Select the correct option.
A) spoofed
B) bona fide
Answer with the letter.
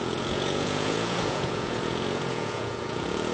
A